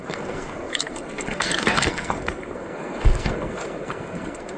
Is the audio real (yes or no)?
no